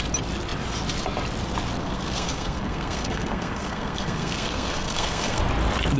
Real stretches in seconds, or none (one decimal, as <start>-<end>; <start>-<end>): 0.0-1.8; 5.4-6.0